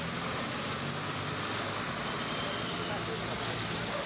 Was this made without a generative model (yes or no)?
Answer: yes